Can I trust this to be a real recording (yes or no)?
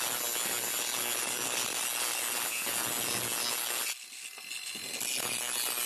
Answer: yes